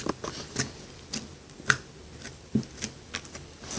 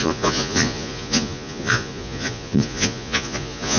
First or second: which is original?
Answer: first